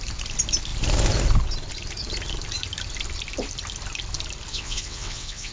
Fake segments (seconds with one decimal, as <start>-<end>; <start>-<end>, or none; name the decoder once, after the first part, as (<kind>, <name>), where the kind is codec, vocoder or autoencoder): 4.5-5.5 (vocoder, WaveNeXt)